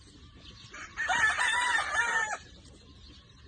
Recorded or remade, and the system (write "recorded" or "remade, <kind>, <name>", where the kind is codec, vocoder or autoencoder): remade, vocoder, BigVGAN v2